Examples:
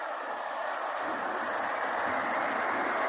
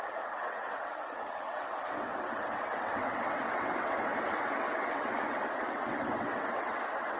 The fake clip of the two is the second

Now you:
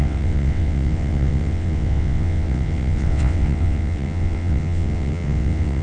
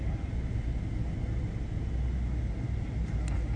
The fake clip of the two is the first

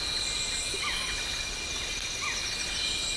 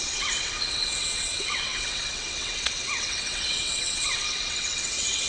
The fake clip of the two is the second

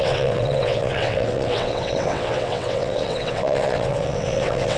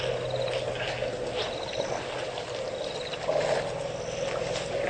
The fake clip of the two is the first